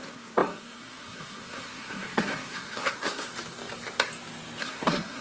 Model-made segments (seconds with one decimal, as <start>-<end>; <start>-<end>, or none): 0.0-3.3; 4.6-5.2